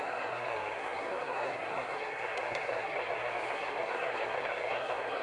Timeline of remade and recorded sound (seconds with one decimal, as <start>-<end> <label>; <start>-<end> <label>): 0.0-5.2 remade